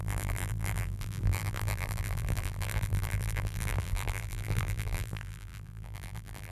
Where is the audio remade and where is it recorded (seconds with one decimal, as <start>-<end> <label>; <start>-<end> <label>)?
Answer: 0.0-6.5 remade